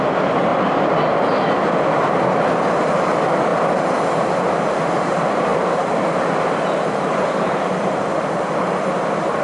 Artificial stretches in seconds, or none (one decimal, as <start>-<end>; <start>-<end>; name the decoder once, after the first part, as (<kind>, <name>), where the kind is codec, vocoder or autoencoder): none